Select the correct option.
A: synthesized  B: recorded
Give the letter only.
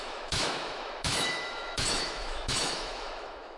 A